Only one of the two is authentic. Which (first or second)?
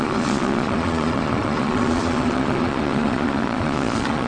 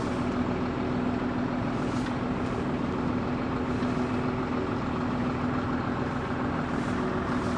second